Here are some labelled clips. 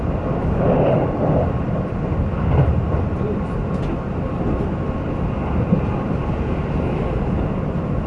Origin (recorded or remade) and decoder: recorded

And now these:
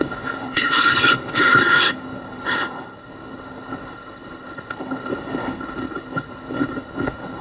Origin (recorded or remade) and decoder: remade, codec, HILCodec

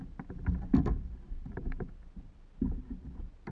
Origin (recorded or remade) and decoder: recorded